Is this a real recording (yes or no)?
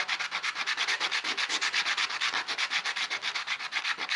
yes